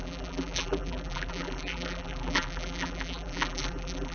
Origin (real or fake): fake